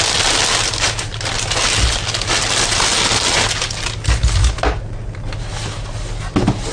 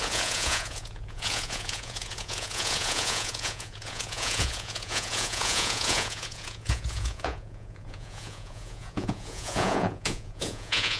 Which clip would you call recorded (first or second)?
first